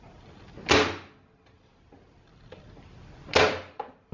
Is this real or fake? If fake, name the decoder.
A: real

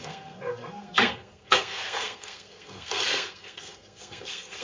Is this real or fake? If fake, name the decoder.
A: fake, codec, SNAC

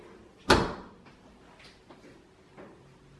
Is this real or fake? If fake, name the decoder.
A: real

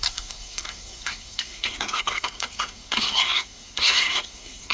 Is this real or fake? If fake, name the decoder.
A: fake, codec, SNAC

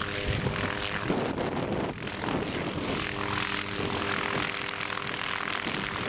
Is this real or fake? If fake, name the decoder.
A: real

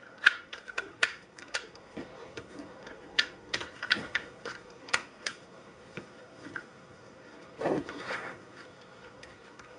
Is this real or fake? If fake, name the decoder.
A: fake, codec, SNAC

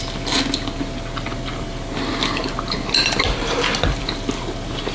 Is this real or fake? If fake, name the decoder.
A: real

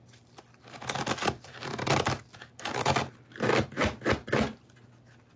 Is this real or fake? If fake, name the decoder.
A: real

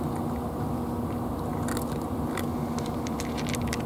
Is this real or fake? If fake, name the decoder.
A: real